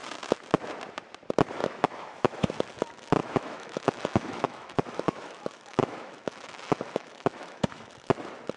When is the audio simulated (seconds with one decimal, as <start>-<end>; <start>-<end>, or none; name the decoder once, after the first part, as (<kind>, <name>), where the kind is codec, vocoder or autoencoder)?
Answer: 1.6-2.5 (autoencoder, DAC-VAE); 3.2-7.9